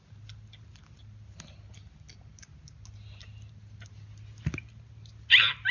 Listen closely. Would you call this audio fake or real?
real